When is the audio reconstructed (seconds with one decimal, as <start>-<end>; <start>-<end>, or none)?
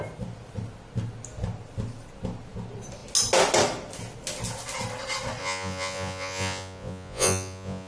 5.4-7.9